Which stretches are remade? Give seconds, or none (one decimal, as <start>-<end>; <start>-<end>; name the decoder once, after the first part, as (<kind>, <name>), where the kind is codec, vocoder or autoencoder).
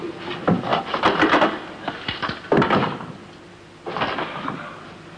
none